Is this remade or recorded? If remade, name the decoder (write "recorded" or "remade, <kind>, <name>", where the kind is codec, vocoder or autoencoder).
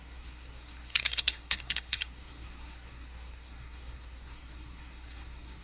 remade, codec, SNAC